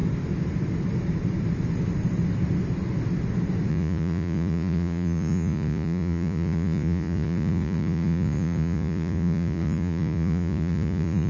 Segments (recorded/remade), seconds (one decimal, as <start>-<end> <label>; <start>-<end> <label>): 0.0-3.7 recorded; 3.7-11.3 remade